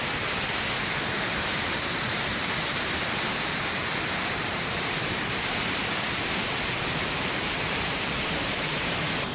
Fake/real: fake